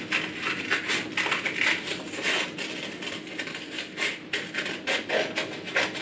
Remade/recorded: recorded